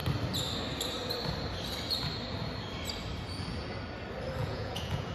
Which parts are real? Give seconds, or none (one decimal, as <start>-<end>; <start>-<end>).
0.0-4.4